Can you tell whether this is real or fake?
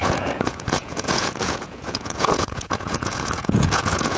fake